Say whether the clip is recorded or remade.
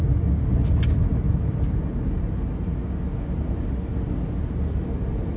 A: recorded